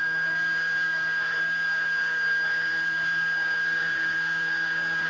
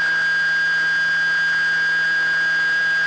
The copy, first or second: first